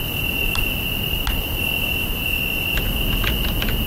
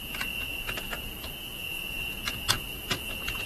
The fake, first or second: second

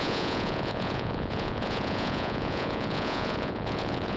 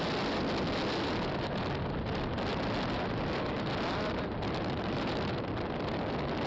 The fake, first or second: first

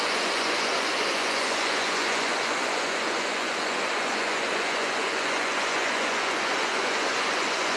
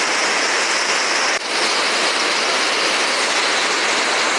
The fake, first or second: first